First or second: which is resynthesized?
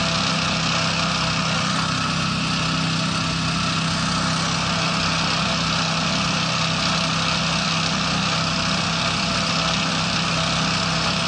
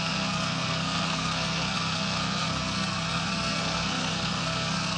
second